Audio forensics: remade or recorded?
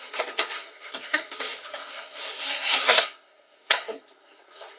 remade